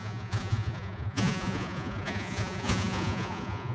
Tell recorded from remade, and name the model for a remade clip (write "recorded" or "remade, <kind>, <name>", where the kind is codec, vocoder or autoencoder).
remade, vocoder, Vocos